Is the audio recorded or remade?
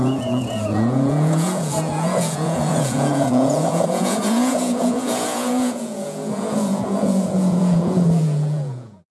remade